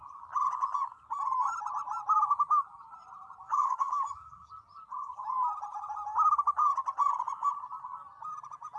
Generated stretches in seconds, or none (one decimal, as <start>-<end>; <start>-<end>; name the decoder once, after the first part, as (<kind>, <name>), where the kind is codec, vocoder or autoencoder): 3.4-4.5 (codec, DAC)